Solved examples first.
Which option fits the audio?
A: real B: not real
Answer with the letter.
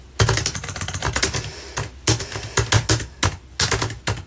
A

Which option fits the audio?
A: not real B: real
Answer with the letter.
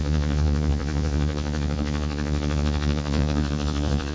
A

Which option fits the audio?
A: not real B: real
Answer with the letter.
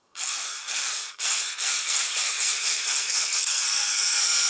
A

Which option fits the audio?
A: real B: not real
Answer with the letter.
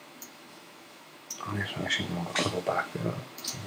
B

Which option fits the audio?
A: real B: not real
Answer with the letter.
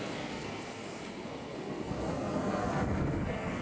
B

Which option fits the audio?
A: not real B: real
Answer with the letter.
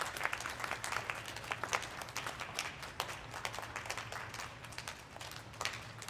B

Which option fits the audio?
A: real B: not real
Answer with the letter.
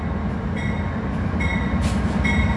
A